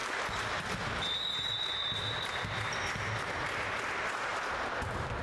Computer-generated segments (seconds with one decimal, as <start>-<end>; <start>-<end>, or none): none